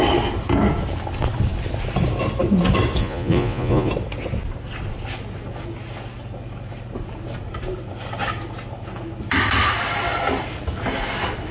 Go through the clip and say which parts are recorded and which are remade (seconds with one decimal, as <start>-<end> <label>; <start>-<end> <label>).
0.0-3.0 recorded; 3.0-3.9 remade; 3.9-11.5 recorded